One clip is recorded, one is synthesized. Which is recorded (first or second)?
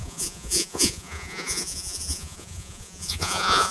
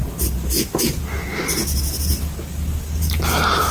second